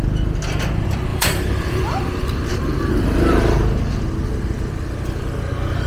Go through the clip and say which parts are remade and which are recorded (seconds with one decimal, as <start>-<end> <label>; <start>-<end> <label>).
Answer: 0.0-1.1 recorded; 1.1-1.8 remade; 1.8-5.9 recorded